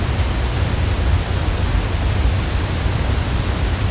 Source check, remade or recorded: recorded